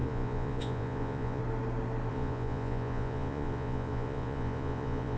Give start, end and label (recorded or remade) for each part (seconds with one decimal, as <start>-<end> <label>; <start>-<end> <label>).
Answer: 0.0-1.4 remade; 1.4-2.1 recorded; 2.1-5.2 remade